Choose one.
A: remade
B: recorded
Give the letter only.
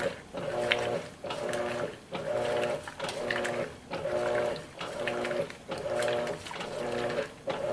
B